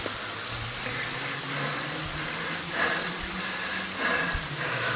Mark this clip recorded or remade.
recorded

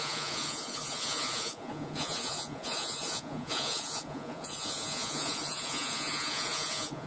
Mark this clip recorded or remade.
remade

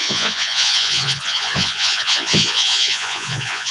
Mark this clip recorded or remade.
remade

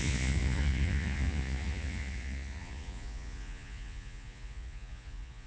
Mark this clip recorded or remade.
remade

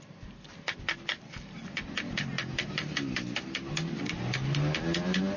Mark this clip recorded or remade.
recorded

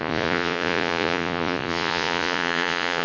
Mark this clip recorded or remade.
remade